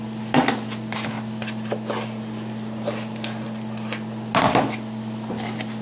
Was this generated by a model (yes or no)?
no